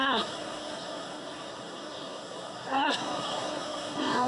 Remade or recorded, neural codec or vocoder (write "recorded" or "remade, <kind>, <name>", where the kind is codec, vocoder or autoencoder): remade, codec, SNAC